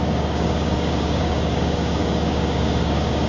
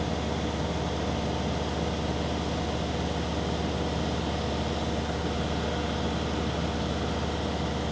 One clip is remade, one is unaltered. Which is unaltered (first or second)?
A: second